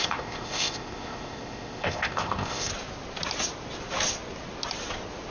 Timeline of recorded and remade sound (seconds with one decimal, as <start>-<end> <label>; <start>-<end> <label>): 0.0-2.7 remade; 2.7-5.3 recorded

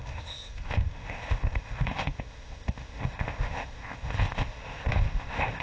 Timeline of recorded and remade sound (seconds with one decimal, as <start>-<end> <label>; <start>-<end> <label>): 0.0-5.6 remade

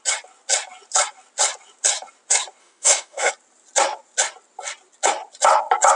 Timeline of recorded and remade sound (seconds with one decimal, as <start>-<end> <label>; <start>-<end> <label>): 0.0-2.6 recorded; 2.6-3.3 remade; 3.3-6.0 recorded

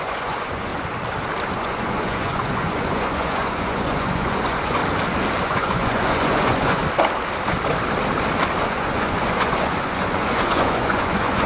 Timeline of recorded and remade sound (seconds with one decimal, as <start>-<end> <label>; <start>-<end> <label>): 0.0-0.7 remade; 0.7-1.5 recorded; 1.5-4.8 remade; 4.8-5.4 recorded; 5.4-6.8 remade; 6.8-8.6 recorded; 8.6-11.5 remade